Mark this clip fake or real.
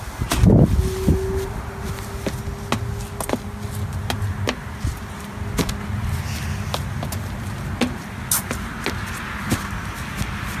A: real